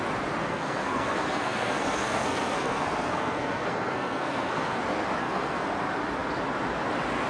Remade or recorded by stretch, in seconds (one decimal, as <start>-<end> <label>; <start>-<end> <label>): 0.0-0.4 recorded; 0.4-4.8 remade; 4.8-5.2 recorded; 5.2-5.8 remade; 5.8-7.3 recorded